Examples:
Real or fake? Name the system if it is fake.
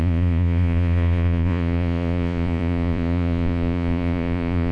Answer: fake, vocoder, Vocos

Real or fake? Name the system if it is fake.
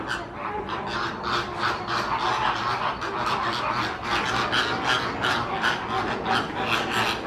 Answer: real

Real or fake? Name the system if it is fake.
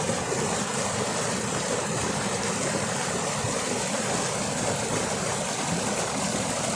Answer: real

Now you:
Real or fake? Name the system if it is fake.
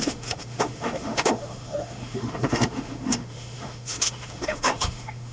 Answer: fake, autoencoder, DAC-VAE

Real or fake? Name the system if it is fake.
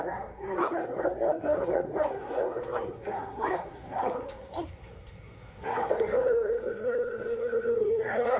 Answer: fake, codec, SNAC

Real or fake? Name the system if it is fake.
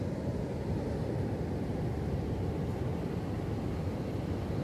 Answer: real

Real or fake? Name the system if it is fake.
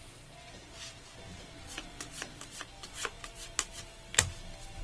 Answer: real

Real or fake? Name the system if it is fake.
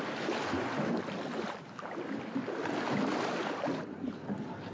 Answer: real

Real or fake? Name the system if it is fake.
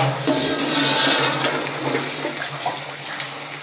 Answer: real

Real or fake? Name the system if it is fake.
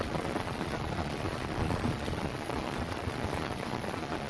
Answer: fake, vocoder, Vocos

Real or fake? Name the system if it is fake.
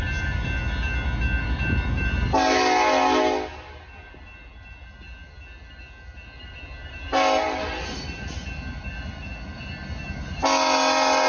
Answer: real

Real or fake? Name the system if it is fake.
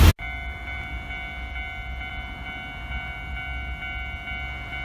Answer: real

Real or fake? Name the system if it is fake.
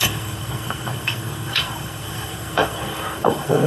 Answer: fake, codec, SNAC